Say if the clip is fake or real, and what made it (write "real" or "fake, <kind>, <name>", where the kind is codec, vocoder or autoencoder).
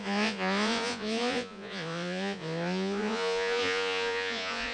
fake, vocoder, Vocos